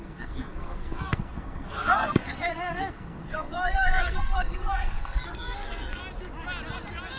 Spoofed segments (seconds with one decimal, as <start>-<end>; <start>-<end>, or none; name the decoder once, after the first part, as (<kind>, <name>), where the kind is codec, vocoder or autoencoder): 0.0-6.0 (codec, SNAC)